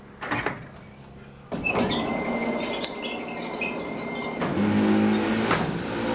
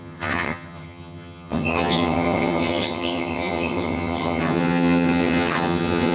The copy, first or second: second